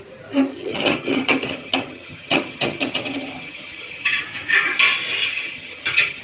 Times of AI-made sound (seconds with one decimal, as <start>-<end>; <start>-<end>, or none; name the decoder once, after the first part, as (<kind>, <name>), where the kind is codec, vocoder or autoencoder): 0.5-4.2 (vocoder, HiFi-GAN); 5.2-6.2